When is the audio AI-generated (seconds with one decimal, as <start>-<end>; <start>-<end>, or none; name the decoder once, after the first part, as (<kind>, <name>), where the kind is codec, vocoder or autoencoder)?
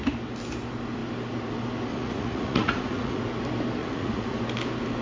1.9-3.2 (vocoder, Vocos); 3.8-4.4